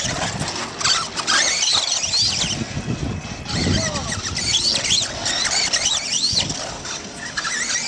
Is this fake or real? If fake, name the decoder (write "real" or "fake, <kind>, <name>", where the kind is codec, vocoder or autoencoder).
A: real